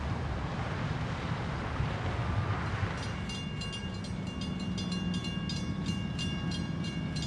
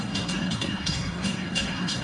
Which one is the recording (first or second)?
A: first